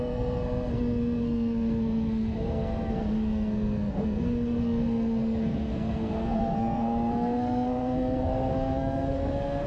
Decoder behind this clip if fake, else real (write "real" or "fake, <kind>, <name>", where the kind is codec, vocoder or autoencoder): fake, codec, SNAC